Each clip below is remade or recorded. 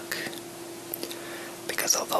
recorded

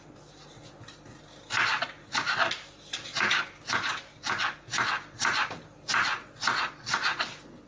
recorded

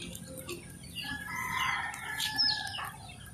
recorded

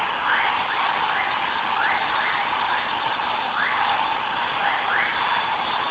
recorded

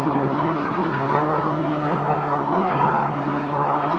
remade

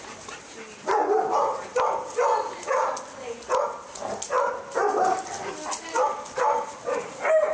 recorded